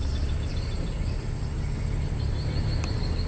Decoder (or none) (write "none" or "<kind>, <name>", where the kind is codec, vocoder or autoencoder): none